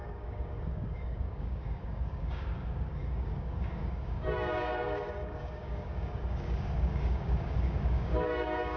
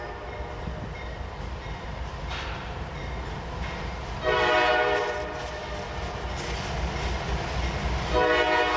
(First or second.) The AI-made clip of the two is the first